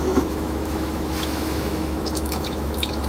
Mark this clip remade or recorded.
remade